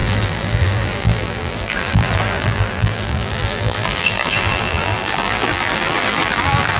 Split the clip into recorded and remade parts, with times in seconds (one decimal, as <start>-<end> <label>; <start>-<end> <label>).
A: 0.0-6.8 remade